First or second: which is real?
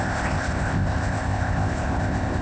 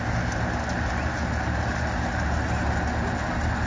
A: second